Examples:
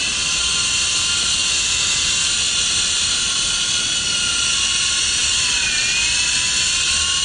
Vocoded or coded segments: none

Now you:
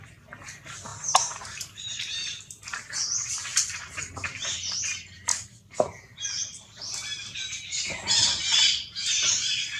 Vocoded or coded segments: 0.9-2.4 (vocoder, BigVGAN v2); 3.5-4.5

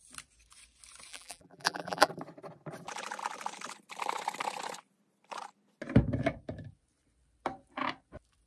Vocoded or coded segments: 1.1-2.1 (vocoder, BigVGAN v2)

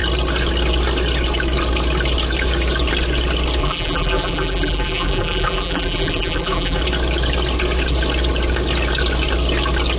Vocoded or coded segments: 3.6-6.8 (vocoder, BigVGAN v2)

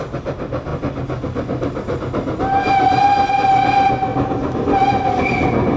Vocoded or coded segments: none

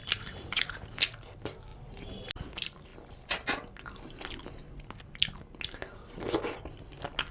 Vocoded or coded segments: 0.0-1.0 (vocoder, BigVGAN v2)

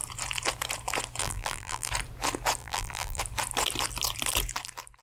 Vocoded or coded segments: 1.2-1.9 (vocoder, BigVGAN v2); 2.6-3.2

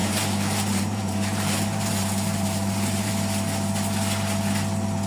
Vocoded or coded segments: 0.0-3.1 (vocoder, BigVGAN v2)